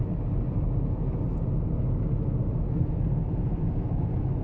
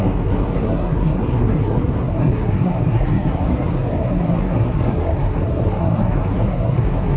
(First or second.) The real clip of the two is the first